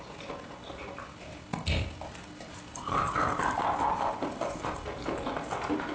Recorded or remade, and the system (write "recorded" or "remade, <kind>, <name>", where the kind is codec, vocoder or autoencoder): recorded